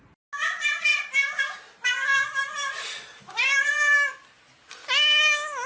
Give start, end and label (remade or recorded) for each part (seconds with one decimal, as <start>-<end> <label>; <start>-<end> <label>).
0.0-0.9 recorded; 0.9-1.4 remade; 1.4-2.1 recorded; 2.1-4.8 remade; 4.8-5.7 recorded